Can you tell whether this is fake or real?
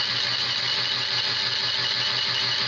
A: real